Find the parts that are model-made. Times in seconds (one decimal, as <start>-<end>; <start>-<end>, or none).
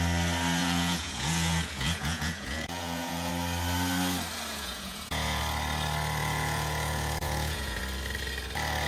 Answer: 0.6-3.3; 4.5-5.4; 6.2-7.8